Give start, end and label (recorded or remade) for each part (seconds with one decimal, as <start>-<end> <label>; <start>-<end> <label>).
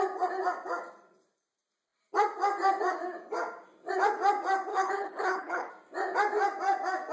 0.0-4.7 recorded; 4.7-5.7 remade; 5.7-7.1 recorded